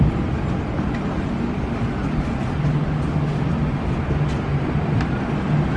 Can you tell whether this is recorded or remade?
recorded